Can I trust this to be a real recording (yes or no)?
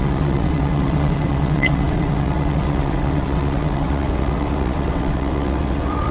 no